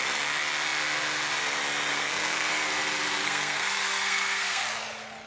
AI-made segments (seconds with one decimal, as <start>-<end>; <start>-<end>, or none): 1.9-2.5; 3.2-4.6